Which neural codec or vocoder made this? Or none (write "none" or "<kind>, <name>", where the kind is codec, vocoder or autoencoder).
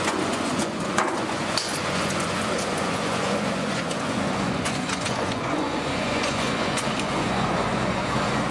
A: vocoder, Vocos